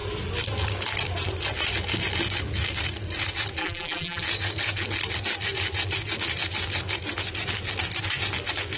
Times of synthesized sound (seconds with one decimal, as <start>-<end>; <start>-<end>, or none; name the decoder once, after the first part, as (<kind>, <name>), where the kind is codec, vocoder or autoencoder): 3.6-4.2 (vocoder, BigVGAN v2)